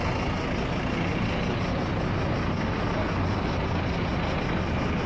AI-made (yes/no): no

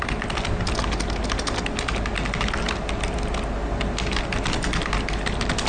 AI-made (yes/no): no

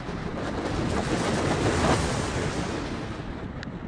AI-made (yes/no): no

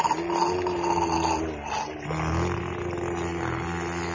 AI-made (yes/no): no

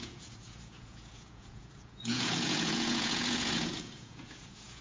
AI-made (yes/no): yes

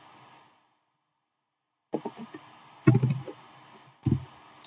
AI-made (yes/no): no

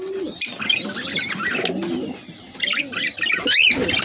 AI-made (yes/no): no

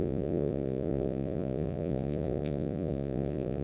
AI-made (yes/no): yes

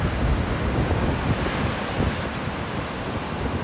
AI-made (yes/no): no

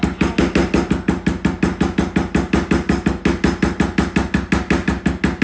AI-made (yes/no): no